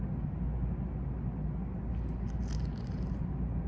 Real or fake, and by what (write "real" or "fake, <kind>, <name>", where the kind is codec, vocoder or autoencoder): real